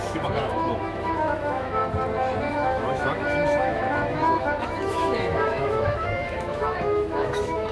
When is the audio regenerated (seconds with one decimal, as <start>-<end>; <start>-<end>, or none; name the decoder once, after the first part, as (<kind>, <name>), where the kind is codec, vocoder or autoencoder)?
0.0-1.8 (autoencoder, DAC-VAE); 2.5-7.7